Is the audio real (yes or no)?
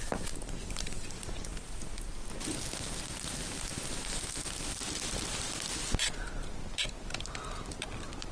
yes